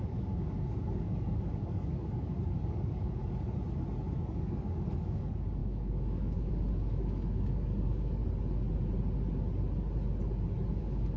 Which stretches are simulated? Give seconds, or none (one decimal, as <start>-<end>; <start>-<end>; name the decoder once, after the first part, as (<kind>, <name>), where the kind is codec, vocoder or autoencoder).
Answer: 0.0-3.2 (codec, DAC); 4.1-8.2; 10.7-11.2